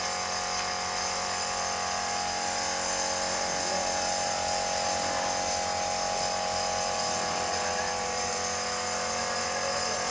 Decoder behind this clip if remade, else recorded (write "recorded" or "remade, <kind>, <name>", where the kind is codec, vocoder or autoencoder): recorded